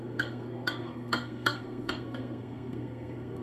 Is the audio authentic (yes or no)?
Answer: no